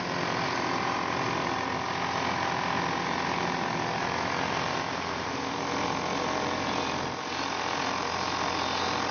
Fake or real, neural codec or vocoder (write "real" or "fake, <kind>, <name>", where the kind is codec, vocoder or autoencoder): real